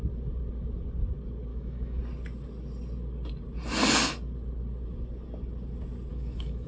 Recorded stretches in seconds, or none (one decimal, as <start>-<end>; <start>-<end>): 0.0-1.5; 2.0-6.1